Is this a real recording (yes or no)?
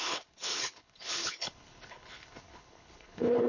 no